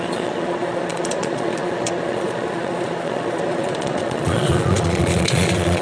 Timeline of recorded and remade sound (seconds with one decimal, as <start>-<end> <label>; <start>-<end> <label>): 0.0-5.8 remade